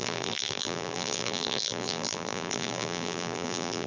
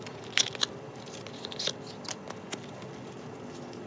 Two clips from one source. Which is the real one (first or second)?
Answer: second